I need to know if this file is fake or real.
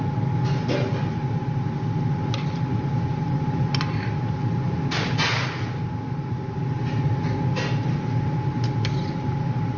real